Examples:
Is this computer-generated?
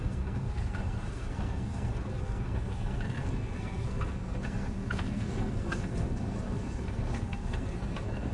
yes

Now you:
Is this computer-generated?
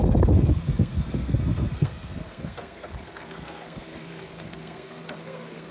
yes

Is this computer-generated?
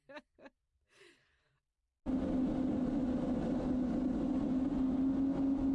no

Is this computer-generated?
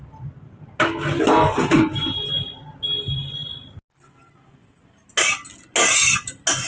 no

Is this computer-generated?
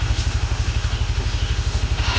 yes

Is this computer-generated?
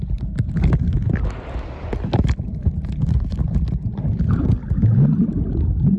no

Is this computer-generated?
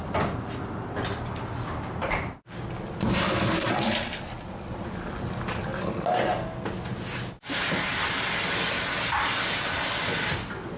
no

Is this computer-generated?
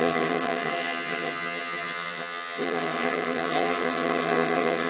yes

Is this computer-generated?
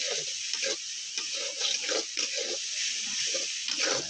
no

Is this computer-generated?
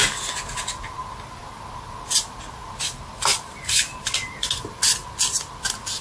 no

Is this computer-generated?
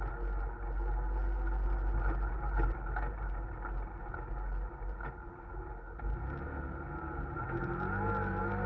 no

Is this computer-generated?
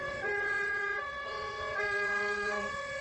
yes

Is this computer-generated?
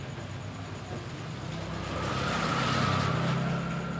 no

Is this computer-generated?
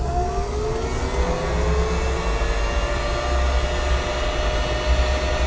no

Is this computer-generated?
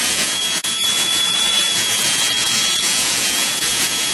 yes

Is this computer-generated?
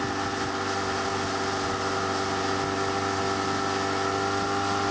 no